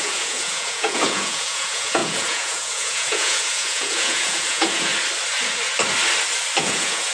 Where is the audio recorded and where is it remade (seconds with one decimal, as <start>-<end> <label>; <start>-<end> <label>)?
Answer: 0.0-4.9 remade; 4.9-6.6 recorded; 6.6-7.1 remade